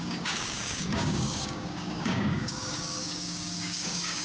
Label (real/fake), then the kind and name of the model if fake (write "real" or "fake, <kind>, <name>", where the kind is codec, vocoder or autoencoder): fake, codec, DAC